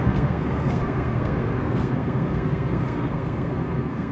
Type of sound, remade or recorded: remade